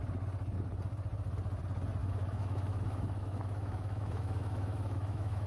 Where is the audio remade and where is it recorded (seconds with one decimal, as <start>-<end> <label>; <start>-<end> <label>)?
0.0-2.0 recorded; 2.0-5.5 remade